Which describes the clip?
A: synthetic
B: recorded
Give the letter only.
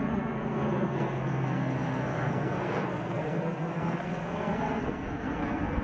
A